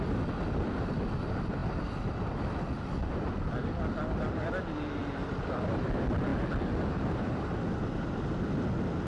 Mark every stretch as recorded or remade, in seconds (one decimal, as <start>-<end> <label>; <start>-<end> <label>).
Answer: 0.0-9.1 recorded

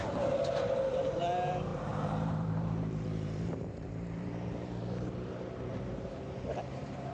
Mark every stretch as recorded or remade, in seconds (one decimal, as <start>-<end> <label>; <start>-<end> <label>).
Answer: 0.0-0.9 recorded; 0.9-7.1 remade

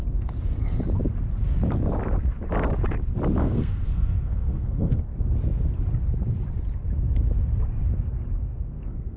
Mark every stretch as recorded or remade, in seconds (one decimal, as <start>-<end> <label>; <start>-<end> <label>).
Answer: 0.0-3.4 recorded; 3.4-5.0 remade; 5.0-8.5 recorded; 8.5-9.2 remade

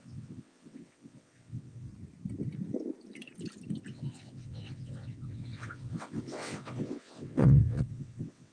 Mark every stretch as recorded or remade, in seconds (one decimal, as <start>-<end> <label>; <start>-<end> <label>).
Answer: 0.0-1.9 remade; 1.9-3.9 recorded; 3.9-8.5 remade

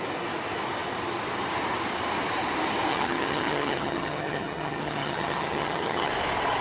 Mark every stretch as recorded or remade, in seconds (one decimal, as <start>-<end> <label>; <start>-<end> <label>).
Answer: 0.0-2.9 recorded; 2.9-6.1 remade; 6.1-6.6 recorded

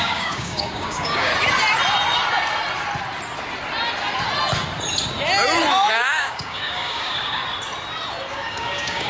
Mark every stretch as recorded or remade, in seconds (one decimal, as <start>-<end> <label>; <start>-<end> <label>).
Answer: 0.0-1.3 remade; 1.3-5.9 recorded; 5.9-7.4 remade; 7.4-8.3 recorded; 8.3-9.1 remade

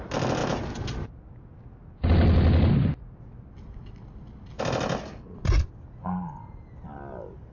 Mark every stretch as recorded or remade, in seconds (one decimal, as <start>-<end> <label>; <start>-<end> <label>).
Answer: 0.0-7.5 recorded

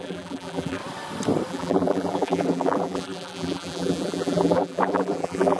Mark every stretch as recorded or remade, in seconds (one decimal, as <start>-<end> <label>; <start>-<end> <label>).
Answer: 0.0-0.8 remade; 0.8-1.5 recorded; 1.5-5.6 remade